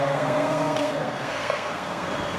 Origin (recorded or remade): remade